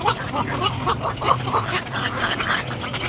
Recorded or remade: recorded